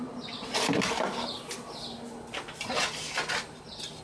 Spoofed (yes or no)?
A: no